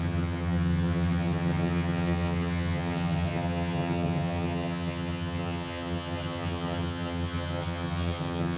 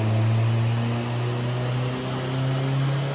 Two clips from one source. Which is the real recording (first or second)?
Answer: second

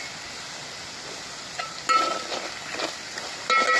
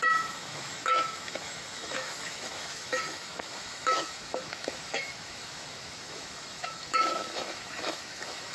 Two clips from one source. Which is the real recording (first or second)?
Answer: first